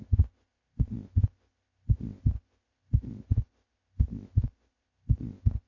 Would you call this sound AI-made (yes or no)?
yes